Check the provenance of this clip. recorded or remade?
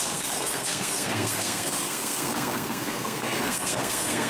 remade